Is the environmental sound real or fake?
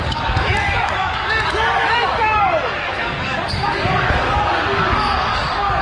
fake